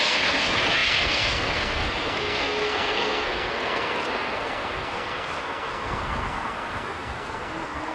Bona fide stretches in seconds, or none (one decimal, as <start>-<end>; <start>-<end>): none